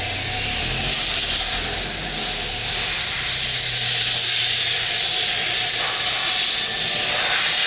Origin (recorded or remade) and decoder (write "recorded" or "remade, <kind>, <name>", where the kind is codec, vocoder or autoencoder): recorded